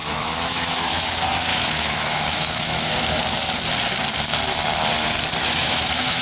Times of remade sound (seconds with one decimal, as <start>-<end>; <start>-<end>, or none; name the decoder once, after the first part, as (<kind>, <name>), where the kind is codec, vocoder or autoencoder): 0.0-1.1 (autoencoder, DAC-VAE); 1.5-3.2; 5.4-6.2